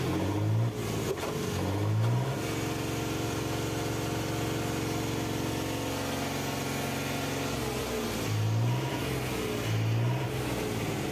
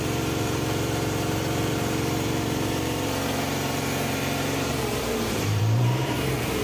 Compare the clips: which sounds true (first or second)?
first